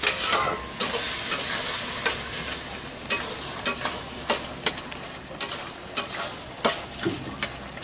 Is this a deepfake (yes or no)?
no